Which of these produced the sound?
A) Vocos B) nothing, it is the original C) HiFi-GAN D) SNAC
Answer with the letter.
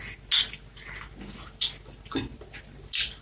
B